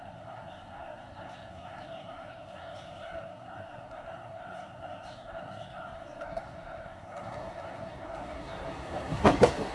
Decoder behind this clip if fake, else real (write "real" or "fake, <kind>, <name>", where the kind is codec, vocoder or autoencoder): fake, codec, SNAC